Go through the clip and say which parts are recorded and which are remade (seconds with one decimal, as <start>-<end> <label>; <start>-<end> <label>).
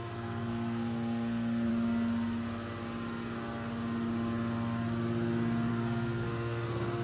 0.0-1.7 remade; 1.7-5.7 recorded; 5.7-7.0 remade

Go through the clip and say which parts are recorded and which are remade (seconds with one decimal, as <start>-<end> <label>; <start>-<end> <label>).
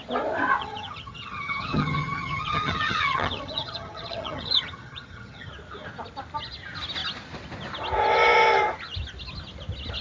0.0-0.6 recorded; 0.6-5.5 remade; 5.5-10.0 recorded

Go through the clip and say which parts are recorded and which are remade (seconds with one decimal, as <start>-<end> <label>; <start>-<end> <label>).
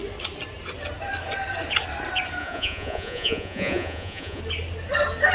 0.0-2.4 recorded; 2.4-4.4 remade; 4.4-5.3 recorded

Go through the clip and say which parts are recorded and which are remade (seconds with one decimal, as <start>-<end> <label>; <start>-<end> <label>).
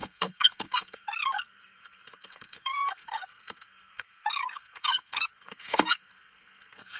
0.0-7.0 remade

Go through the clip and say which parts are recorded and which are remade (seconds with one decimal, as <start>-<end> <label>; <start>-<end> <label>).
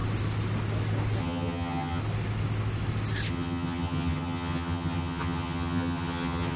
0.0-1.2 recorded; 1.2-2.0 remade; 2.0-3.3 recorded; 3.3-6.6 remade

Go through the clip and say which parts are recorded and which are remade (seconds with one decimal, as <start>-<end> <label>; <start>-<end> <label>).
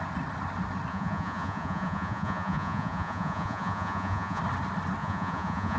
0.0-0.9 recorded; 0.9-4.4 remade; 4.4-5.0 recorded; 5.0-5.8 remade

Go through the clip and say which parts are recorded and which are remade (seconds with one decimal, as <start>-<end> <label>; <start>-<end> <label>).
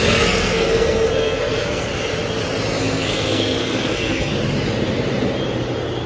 0.0-1.9 remade; 1.9-2.8 recorded; 2.8-4.3 remade; 4.3-6.1 recorded